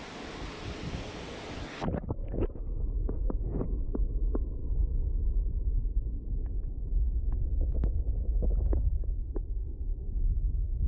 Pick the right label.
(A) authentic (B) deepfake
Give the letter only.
A